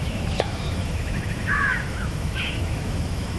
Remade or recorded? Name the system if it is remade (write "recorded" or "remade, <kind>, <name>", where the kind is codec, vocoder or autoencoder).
remade, autoencoder, DAC-VAE